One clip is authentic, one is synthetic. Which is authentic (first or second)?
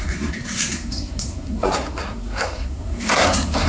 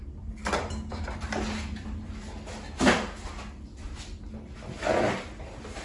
second